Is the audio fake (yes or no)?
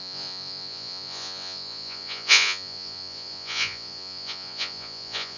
yes